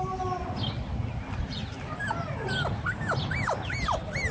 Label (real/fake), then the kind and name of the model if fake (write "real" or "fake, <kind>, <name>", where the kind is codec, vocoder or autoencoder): real